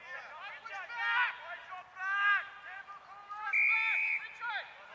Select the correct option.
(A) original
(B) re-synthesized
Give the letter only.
A